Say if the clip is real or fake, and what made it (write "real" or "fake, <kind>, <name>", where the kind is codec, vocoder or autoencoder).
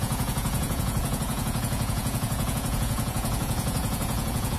fake, vocoder, Vocos